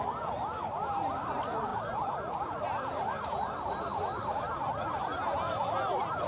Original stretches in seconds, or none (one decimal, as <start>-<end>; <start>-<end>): 0.0-6.3